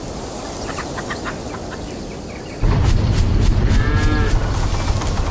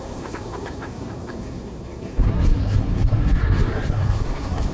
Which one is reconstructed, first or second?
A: second